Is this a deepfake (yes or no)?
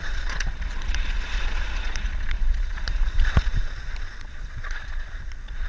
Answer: yes